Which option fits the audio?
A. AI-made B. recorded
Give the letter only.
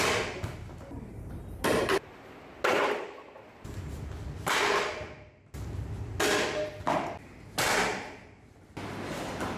B